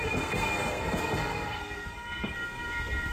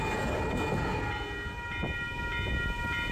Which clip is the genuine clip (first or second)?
second